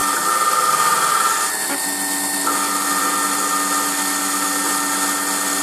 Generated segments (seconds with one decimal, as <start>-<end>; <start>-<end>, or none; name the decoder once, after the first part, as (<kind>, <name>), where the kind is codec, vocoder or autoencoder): none